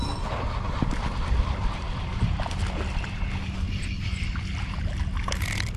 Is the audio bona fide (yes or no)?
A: yes